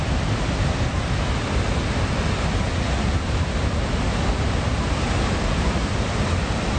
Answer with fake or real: real